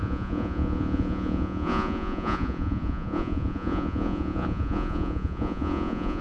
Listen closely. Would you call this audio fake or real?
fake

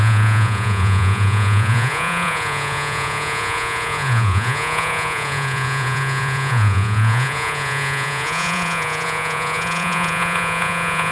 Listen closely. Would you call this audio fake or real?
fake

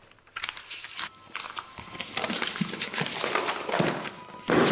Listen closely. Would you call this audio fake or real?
real